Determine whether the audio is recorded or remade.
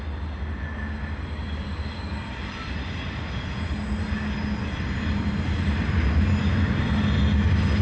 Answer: recorded